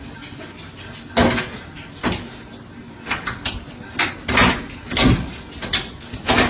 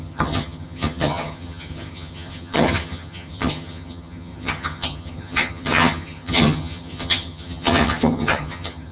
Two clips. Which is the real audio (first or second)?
first